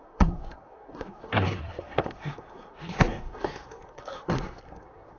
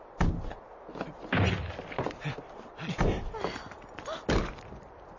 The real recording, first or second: second